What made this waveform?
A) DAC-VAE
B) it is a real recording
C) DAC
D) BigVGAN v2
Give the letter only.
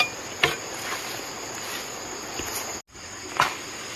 B